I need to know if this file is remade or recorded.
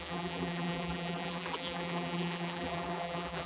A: remade